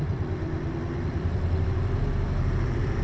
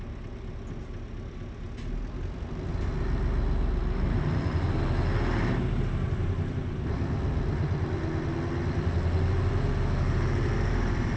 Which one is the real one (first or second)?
second